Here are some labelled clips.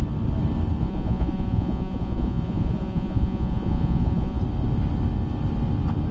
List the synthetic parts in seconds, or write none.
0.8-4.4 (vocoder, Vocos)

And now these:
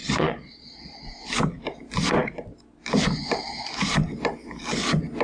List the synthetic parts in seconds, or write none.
0.0-1.0 (vocoder, Vocos)

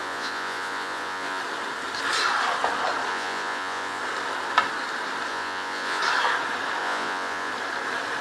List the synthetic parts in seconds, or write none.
0.0-1.4 (vocoder, Vocos); 3.1-4.0; 5.3-6.0; 6.8-7.5

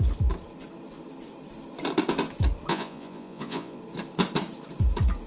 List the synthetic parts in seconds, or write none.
2.7-3.8 (vocoder, Vocos)

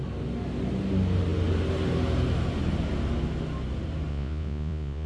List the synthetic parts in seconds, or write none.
4.1-5.1 (vocoder, Vocos)

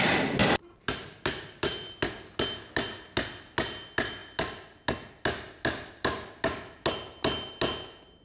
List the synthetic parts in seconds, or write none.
none

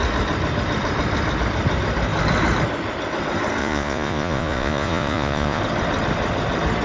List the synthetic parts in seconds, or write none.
3.6-5.6 (vocoder, Vocos)

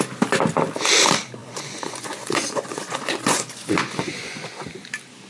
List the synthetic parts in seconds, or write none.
1.4-4.6 (vocoder, Vocos)